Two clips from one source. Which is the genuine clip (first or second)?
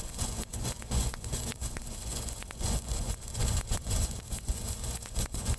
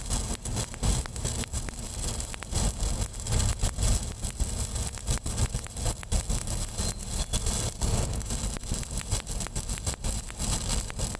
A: second